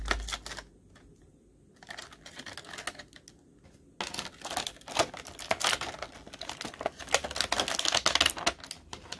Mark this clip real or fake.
real